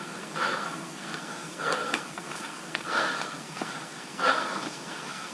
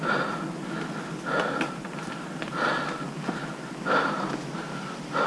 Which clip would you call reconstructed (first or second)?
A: first